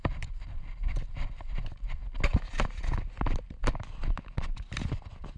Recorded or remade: recorded